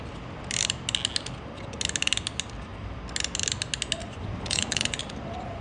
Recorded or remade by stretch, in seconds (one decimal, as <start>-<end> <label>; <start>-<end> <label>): 0.0-4.0 recorded; 4.0-5.0 remade; 5.0-5.6 recorded